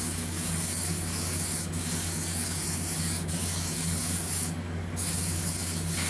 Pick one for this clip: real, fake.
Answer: fake